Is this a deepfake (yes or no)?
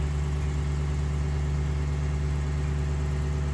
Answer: no